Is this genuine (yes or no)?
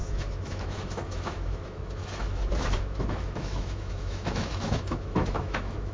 no